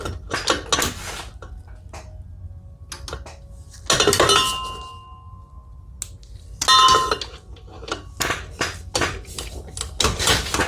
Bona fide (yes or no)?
yes